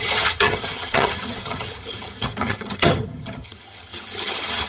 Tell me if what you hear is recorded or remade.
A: remade